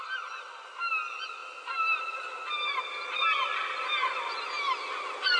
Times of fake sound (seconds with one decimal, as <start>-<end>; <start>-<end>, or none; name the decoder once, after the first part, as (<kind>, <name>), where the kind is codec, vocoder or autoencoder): none